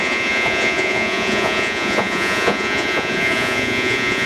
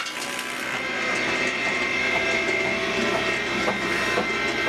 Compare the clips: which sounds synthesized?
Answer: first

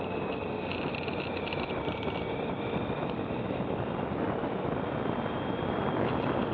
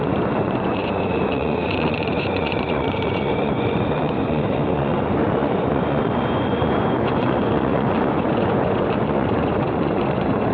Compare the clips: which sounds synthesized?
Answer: second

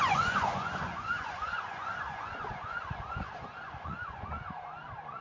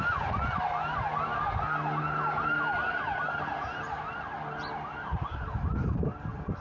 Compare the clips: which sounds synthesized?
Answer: first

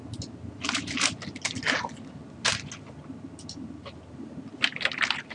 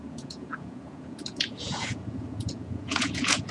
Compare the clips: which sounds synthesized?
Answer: second